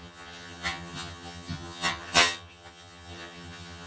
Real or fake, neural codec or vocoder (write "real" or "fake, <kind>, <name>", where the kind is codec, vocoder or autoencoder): fake, vocoder, HiFi-GAN